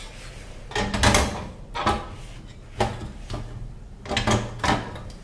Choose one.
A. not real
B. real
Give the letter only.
B